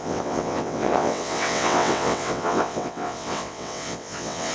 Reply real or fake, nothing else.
fake